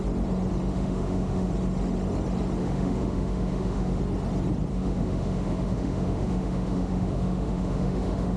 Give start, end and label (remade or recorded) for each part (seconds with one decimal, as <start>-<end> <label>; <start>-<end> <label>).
0.0-0.7 recorded; 0.7-1.5 remade; 1.5-2.6 recorded; 2.6-4.0 remade; 4.0-4.7 recorded; 4.7-8.4 remade

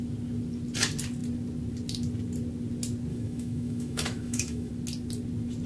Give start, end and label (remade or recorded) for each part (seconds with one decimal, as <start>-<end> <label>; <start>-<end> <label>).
0.0-3.1 recorded; 3.1-4.7 remade; 4.7-5.7 recorded

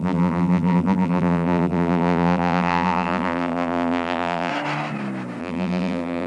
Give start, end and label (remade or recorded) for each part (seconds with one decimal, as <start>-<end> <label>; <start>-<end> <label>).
0.0-4.5 remade; 4.5-5.4 recorded; 5.4-6.3 remade